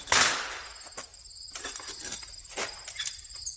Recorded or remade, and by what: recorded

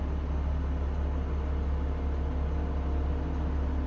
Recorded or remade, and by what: recorded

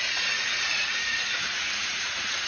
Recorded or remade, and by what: remade, vocoder, Vocos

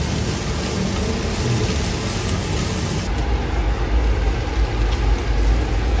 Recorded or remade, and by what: recorded